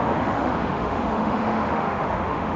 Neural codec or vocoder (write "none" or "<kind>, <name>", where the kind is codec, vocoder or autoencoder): autoencoder, DAC-VAE